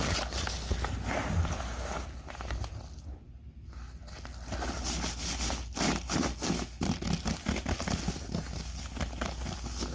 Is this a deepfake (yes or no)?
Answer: no